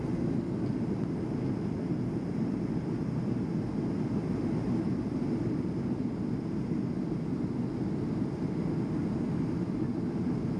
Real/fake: real